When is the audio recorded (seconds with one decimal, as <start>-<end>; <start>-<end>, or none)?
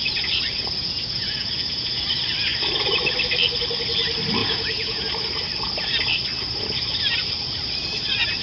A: 0.0-0.8; 2.0-4.4; 5.0-8.4